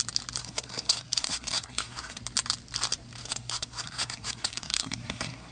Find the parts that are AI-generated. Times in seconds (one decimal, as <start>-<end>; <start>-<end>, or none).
0.4-2.2; 3.2-5.5